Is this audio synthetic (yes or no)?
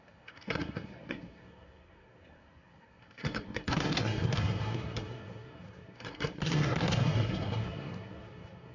yes